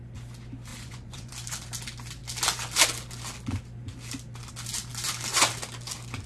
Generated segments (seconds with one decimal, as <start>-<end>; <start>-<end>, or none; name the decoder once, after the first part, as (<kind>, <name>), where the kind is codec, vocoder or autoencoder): 0.7-1.3 (vocoder, Vocos)